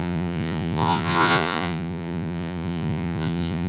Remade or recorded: remade